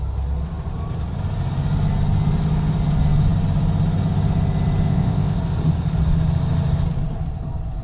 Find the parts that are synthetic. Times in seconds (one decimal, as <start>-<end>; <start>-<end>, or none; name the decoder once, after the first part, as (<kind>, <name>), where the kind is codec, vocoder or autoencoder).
4.9-5.4 (codec, ZipCodec)